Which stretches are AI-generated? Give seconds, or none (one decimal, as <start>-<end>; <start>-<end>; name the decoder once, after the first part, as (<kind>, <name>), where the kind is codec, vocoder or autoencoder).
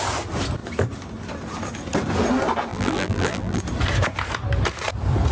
2.7-3.6 (vocoder, BigVGAN v2)